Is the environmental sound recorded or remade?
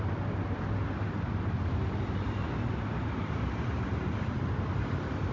recorded